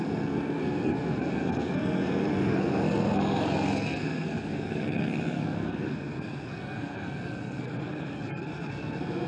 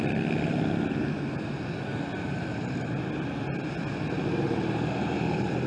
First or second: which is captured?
second